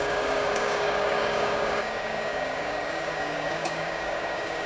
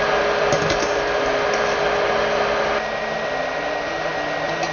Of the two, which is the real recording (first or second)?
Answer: second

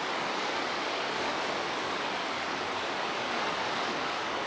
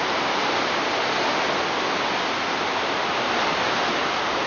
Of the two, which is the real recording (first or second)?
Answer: second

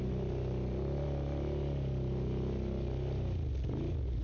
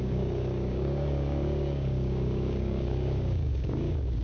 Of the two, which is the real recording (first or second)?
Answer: first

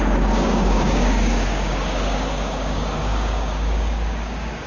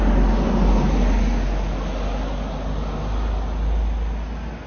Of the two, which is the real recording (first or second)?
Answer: second